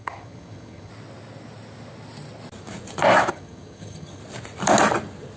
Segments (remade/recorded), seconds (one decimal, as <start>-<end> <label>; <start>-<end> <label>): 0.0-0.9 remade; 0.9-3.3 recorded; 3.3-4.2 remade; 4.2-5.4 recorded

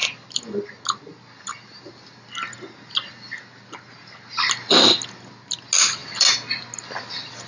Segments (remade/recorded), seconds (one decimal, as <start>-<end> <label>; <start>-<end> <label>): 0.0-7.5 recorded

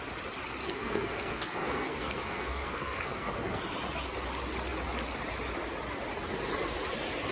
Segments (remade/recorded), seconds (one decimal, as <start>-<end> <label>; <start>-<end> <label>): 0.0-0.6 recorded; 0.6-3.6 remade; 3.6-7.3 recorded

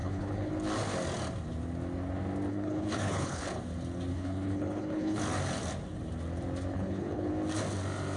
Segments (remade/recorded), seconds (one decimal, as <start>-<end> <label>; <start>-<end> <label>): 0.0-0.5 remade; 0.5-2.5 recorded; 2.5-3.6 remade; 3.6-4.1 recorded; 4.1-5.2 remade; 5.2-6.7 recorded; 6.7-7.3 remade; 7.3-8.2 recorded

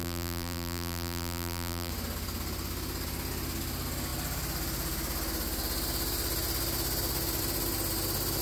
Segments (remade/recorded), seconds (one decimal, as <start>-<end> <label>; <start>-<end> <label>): 0.0-1.9 remade; 1.9-8.4 recorded

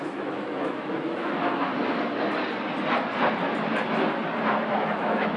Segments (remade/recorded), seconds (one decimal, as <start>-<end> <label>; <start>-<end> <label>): 0.0-1.7 remade; 1.7-4.9 recorded; 4.9-5.4 remade